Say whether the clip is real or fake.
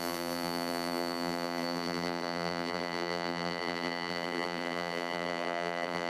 fake